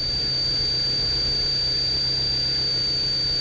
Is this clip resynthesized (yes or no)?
no